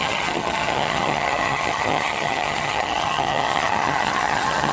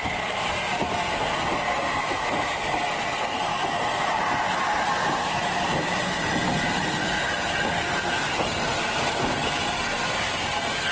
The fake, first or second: first